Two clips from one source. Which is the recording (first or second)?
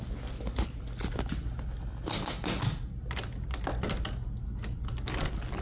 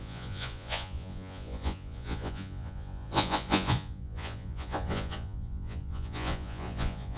first